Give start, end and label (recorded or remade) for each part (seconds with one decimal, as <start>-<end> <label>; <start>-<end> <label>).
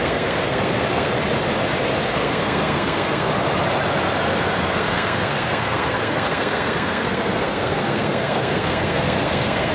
0.0-1.1 remade; 1.1-2.1 recorded; 2.1-3.3 remade; 3.3-4.6 recorded; 4.6-9.7 remade